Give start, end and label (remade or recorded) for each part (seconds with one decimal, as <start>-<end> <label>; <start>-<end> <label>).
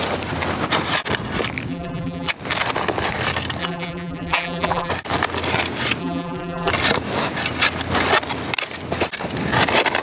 0.0-1.7 recorded; 1.7-2.3 remade; 2.3-3.6 recorded; 3.6-4.9 remade; 4.9-6.0 recorded; 6.0-6.7 remade; 6.7-10.0 recorded